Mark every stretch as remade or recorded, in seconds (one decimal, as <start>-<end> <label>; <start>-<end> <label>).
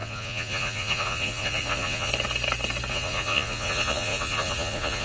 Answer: 0.0-2.1 remade; 2.1-2.9 recorded; 2.9-5.0 remade